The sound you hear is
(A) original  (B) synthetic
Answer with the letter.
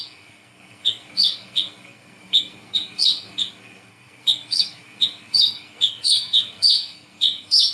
B